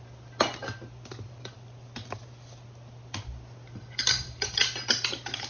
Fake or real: real